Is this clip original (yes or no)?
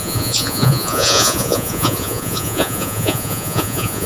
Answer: no